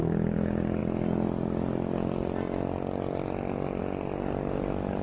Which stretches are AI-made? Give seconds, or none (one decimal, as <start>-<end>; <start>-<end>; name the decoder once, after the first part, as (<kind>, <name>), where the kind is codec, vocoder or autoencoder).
none